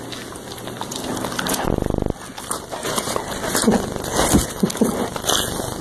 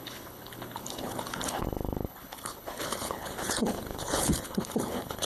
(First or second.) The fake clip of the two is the second